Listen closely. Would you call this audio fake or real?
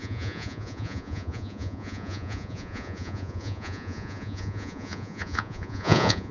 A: fake